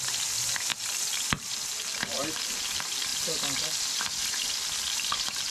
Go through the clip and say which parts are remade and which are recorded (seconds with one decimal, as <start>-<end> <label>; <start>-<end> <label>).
0.0-5.5 recorded